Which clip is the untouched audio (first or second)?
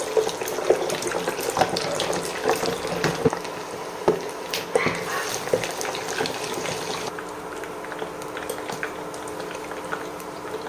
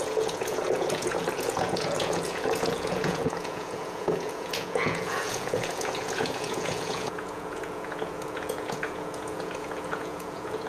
first